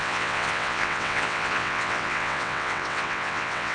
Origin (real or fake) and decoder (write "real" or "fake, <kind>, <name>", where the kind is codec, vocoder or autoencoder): fake, vocoder, WaveNeXt